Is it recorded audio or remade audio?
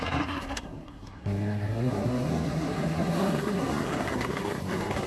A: remade